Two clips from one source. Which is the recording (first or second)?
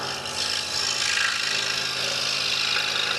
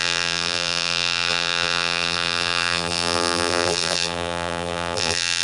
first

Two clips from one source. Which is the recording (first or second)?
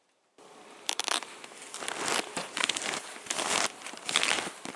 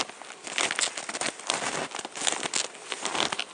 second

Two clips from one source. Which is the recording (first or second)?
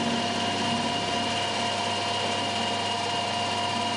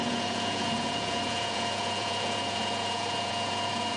first